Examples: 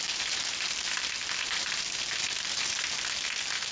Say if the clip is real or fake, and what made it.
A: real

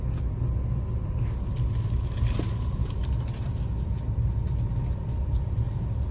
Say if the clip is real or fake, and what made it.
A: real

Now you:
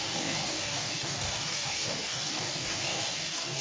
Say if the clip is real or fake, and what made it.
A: fake, codec, DAC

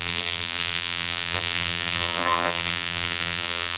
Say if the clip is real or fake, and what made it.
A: fake, vocoder, BigVGAN v2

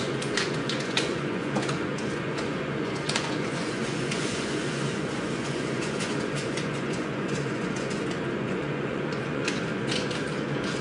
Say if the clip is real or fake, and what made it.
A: fake, vocoder, Vocos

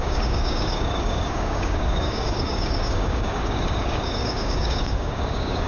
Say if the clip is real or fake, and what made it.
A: fake, codec, DAC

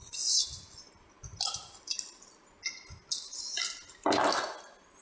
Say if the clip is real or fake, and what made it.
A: real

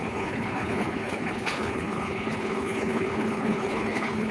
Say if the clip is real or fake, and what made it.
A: fake, codec, HILCodec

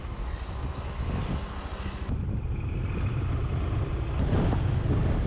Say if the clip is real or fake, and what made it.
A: real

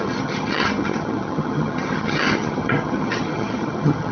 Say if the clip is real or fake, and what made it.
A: fake, vocoder, HiFi-GAN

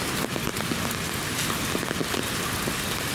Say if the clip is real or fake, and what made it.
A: real